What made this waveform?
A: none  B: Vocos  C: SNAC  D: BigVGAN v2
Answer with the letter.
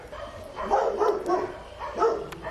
A